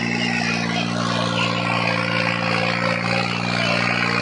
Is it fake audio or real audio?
real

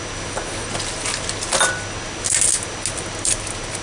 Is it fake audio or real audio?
real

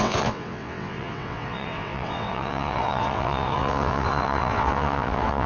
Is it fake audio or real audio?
fake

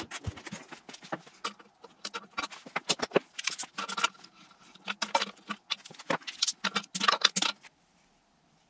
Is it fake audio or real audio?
real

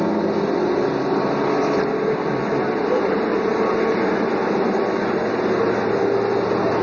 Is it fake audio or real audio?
real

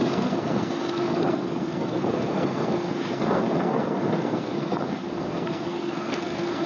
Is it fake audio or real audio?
fake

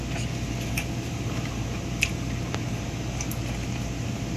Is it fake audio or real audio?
real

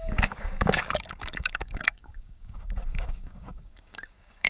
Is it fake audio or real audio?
fake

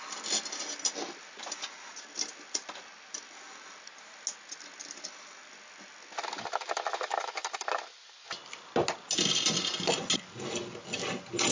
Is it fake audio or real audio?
real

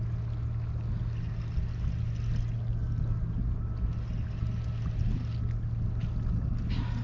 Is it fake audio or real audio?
real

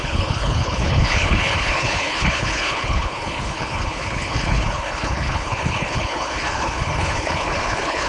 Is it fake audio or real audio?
fake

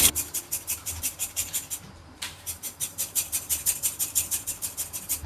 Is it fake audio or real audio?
fake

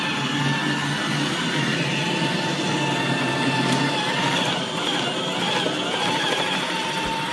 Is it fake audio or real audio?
real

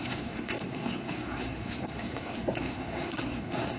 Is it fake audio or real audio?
fake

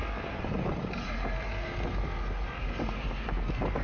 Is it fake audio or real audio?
real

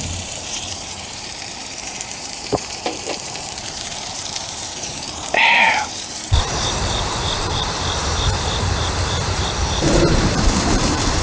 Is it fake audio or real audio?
fake